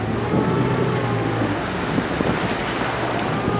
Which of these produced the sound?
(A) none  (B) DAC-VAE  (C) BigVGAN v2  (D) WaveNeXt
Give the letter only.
A